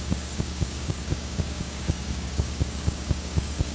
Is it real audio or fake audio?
fake